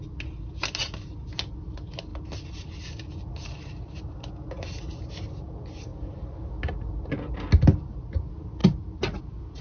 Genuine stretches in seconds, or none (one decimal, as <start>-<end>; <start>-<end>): 0.0-9.6